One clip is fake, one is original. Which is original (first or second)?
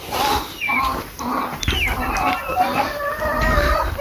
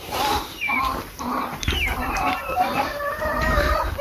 first